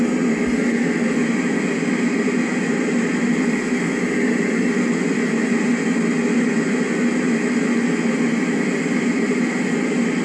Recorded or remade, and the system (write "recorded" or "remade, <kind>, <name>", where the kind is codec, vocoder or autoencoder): recorded